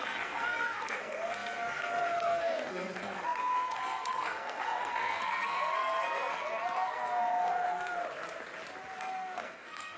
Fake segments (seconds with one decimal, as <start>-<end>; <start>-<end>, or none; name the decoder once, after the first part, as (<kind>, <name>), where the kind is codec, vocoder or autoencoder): 0.0-8.0 (codec, SNAC); 9.0-10.0